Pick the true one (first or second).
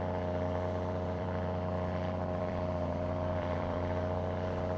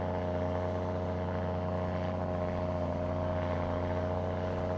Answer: second